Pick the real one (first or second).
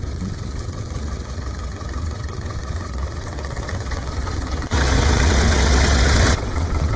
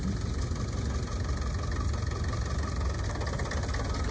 second